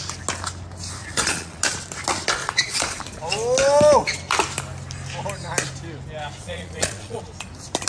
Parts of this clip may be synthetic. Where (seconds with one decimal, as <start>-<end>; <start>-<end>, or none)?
1.0-1.6; 2.4-3.0; 6.4-7.2